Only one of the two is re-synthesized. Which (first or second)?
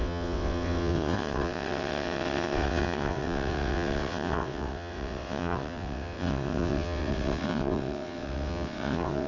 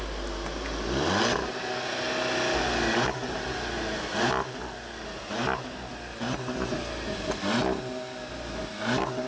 first